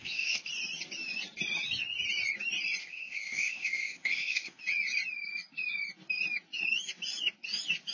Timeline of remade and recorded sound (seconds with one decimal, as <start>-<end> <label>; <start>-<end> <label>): 0.0-0.5 remade; 0.5-2.8 recorded; 2.8-4.6 remade; 4.6-7.9 recorded